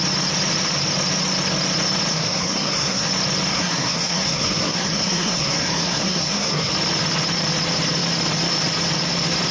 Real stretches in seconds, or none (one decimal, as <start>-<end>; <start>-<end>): 0.0-2.1; 3.1-3.5; 6.7-9.5